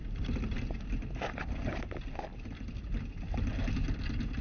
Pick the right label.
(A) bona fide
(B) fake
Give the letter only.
A